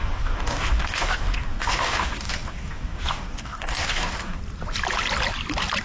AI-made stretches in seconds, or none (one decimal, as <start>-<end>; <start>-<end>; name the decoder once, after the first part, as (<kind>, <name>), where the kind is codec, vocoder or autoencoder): 0.0-4.4 (codec, DAC)